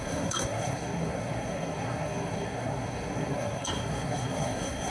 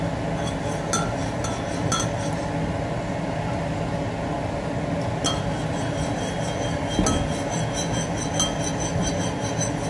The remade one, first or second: first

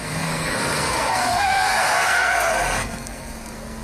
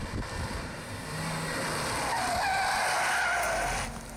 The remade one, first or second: first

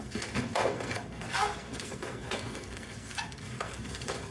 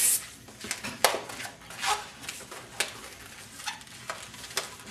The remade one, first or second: first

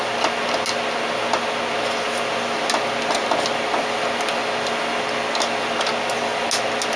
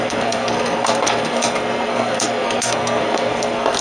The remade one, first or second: second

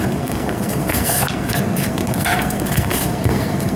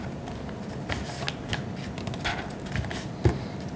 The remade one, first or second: first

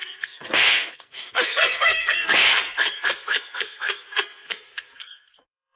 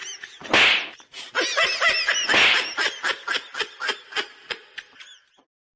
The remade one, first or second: first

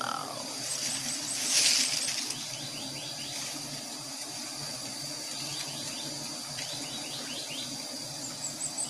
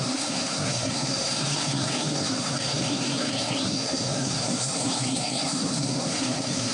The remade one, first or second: second